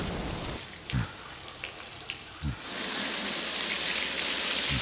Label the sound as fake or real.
real